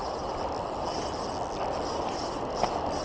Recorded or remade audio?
recorded